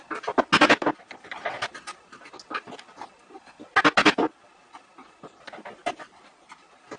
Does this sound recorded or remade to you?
recorded